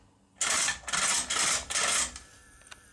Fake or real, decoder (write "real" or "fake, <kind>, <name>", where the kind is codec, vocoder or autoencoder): real